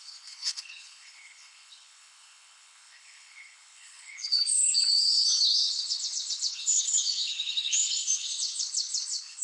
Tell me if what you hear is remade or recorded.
remade